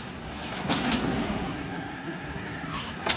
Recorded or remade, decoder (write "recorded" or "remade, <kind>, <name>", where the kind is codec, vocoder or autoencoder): remade, codec, SNAC